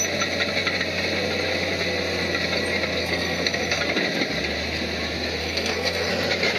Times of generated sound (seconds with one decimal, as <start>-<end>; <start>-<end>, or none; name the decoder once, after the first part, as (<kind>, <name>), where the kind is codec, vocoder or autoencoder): 3.0-3.8 (codec, SNAC); 5.4-6.1